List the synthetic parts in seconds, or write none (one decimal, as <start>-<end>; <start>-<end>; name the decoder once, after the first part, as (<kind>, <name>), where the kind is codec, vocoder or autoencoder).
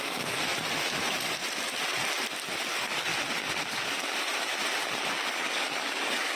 0.0-0.4 (codec, DAC); 2.7-3.1; 5.3-6.4